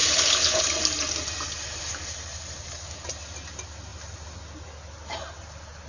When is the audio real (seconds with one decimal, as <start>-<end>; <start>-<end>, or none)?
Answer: 0.6-5.9